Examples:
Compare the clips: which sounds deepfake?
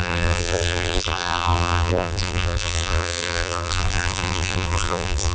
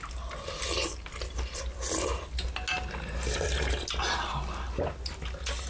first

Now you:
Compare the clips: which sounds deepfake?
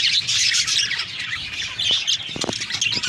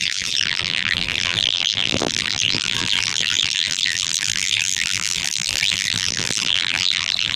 second